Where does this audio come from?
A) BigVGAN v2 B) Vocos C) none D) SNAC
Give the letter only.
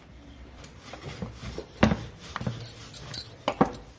C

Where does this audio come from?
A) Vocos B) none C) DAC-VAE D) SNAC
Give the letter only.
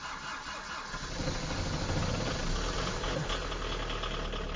B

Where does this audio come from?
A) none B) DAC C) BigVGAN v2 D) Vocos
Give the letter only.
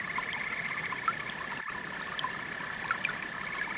A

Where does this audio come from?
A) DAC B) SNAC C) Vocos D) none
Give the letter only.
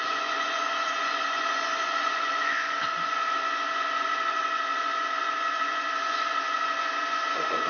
C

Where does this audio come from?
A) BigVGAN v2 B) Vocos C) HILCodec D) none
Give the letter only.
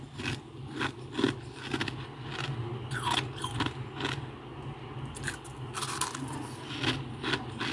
D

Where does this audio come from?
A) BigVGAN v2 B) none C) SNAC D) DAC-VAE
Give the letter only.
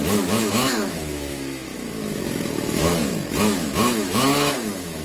D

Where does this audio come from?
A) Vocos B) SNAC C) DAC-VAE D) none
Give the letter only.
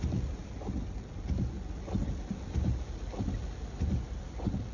D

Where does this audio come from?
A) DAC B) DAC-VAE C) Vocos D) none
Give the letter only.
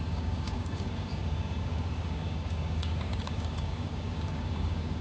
A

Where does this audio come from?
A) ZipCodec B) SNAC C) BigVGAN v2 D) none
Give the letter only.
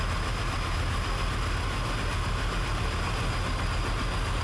D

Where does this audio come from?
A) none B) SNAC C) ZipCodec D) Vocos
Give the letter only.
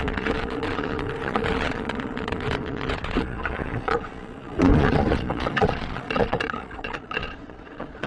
D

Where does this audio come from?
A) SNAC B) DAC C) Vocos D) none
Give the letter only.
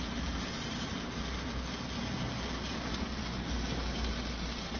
D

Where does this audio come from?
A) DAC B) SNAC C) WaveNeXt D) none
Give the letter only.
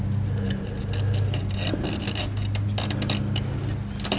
D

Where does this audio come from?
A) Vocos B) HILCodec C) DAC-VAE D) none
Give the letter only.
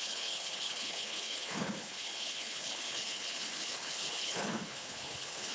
B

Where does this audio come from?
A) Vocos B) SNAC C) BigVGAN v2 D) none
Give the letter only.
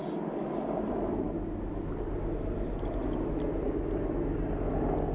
D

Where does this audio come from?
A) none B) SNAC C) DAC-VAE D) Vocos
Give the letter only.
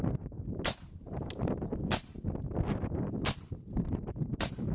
A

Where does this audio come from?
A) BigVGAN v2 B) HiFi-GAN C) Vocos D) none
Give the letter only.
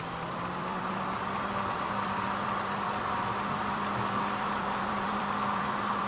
A